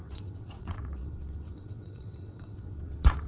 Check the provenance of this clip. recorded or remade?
remade